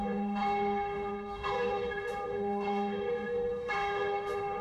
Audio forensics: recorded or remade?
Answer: remade